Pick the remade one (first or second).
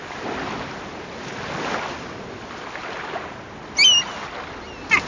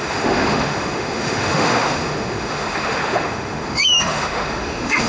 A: second